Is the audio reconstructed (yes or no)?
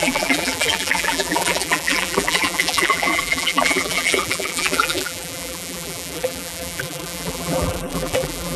yes